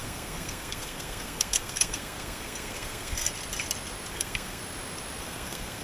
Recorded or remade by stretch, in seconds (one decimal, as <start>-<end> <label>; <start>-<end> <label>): 0.0-3.3 remade; 3.3-4.1 recorded; 4.1-4.6 remade; 4.6-5.2 recorded; 5.2-5.8 remade